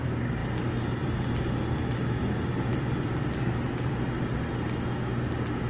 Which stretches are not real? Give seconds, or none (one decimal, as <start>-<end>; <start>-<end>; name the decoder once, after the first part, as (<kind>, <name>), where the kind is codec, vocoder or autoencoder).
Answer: none